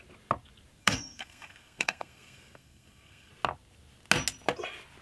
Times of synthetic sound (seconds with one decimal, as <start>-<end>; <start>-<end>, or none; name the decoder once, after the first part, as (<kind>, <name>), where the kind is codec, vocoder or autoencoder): 0.8-3.3 (codec, SNAC)